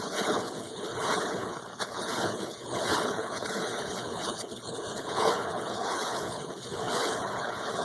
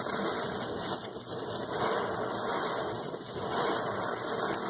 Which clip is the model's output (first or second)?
first